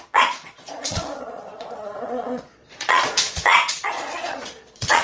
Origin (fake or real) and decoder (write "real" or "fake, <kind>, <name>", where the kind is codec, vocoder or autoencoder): fake, vocoder, Vocos